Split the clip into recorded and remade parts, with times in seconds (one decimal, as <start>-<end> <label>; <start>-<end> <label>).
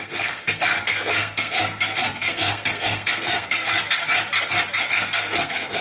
0.0-3.8 remade; 3.8-4.9 recorded; 4.9-5.8 remade